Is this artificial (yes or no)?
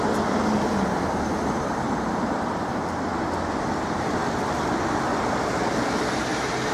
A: no